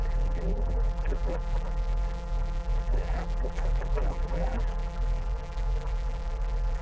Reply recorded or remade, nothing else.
remade